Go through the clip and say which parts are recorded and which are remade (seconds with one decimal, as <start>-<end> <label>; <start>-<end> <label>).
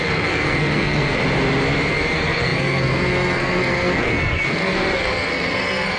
0.0-1.2 remade; 1.2-1.9 recorded; 1.9-6.0 remade